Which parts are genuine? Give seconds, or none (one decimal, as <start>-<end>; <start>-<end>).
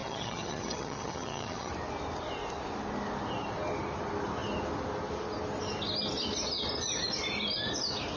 1.7-8.2